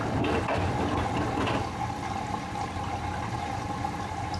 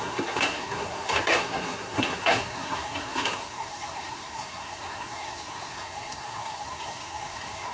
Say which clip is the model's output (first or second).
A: second